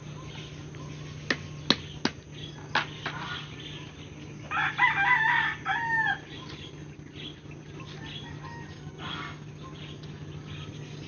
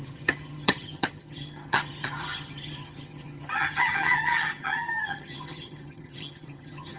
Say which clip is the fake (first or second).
second